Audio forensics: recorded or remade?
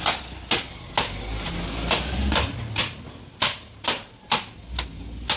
recorded